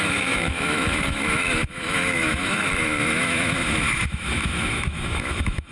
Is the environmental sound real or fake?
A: fake